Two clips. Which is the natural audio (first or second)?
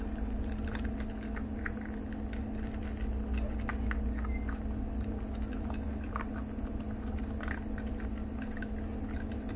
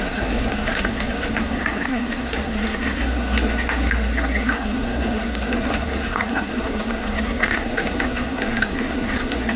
first